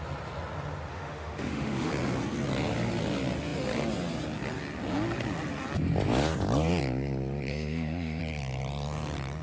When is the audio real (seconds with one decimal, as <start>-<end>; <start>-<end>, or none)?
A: 0.0-0.9; 1.9-7.5; 8.2-9.4